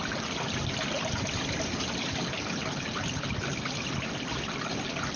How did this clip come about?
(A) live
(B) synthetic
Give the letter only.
A